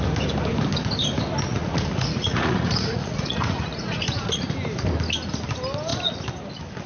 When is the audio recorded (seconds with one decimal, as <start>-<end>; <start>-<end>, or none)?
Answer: 0.0-1.5; 4.4-6.9